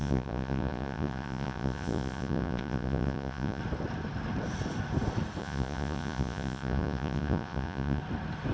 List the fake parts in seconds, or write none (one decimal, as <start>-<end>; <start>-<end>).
0.0-3.6; 5.4-8.0